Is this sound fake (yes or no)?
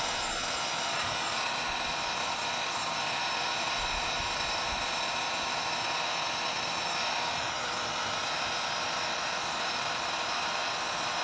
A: yes